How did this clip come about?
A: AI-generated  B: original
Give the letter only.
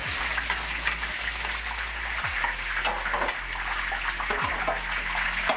B